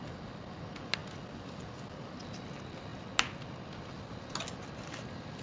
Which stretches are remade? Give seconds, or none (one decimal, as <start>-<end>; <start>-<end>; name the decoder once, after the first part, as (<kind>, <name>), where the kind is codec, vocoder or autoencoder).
none